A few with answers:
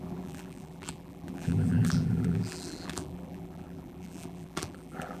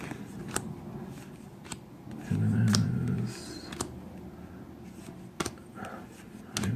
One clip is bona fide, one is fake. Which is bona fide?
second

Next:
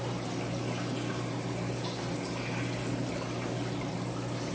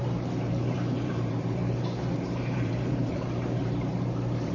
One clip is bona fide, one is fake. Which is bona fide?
first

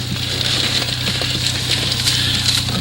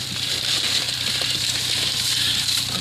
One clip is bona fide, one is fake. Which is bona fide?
first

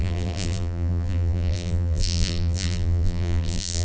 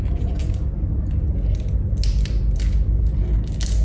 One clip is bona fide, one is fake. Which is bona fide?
second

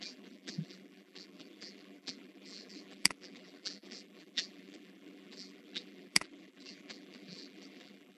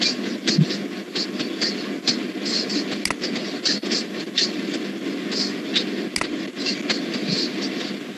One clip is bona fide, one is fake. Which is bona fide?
second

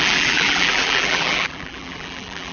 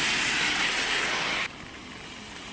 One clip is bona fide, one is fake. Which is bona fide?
second